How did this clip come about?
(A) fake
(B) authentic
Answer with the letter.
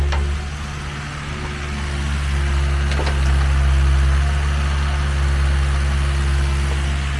B